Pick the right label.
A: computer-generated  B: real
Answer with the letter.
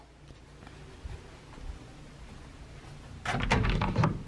B